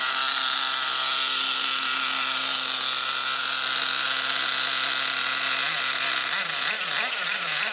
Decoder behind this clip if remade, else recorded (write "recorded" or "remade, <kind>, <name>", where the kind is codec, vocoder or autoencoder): recorded